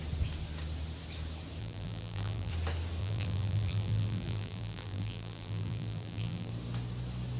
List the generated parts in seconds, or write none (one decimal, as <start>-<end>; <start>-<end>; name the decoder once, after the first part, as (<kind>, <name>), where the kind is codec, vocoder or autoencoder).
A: 1.6-2.5 (vocoder, BigVGAN v2); 3.0-6.5